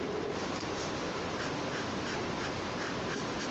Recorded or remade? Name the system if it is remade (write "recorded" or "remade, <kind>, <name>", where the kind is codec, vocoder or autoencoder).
recorded